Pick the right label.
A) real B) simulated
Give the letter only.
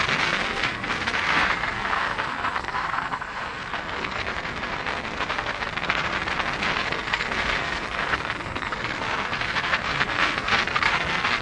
B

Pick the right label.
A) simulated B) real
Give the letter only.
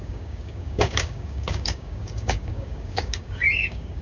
A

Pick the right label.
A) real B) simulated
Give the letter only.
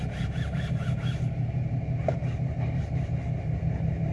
B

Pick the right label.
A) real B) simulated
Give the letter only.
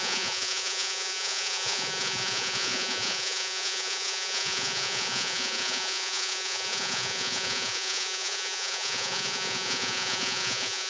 B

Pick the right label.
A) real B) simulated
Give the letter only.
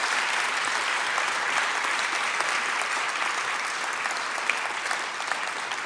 A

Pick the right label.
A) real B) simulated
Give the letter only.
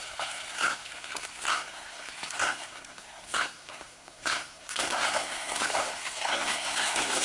B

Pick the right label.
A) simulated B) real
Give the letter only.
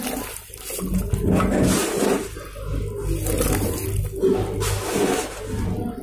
B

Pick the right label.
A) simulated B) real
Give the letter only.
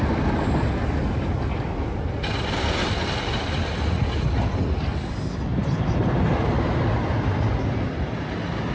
B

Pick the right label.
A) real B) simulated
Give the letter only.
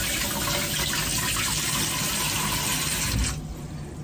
A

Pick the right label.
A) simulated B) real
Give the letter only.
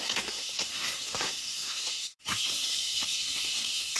A